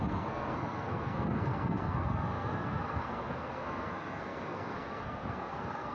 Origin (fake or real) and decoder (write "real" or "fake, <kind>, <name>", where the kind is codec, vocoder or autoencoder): fake, codec, SNAC